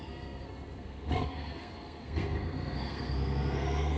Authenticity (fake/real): fake